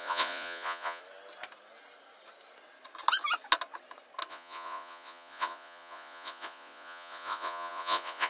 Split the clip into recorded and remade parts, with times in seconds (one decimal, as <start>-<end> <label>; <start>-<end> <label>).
0.0-1.0 remade; 1.0-4.3 recorded; 4.3-8.3 remade

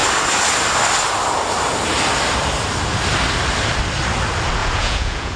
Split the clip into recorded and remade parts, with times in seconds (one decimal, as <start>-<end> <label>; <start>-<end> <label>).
0.0-4.6 recorded; 4.6-5.4 remade